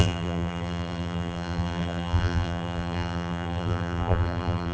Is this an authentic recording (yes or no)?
no